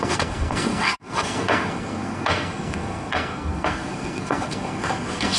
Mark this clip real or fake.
fake